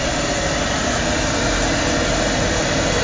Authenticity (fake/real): real